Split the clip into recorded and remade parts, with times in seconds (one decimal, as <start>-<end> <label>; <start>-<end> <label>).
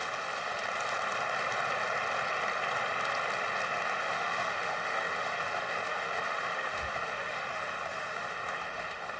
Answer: 0.0-0.5 remade; 0.5-4.0 recorded; 4.0-9.2 remade